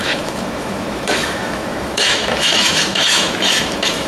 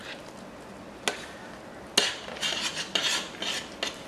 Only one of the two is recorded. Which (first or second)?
second